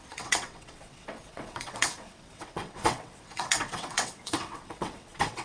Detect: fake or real fake